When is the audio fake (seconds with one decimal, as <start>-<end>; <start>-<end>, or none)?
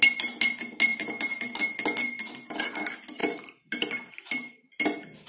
none